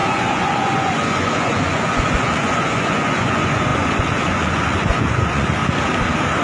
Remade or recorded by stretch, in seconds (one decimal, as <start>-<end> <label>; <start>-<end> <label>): 0.0-5.6 remade; 5.6-6.4 recorded